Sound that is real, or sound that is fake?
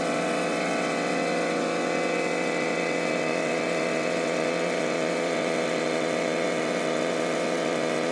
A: fake